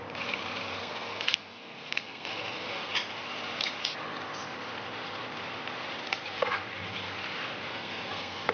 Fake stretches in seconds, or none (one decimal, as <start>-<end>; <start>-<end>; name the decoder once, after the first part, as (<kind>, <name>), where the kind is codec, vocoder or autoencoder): 0.8-2.9 (codec, SNAC); 7.7-8.5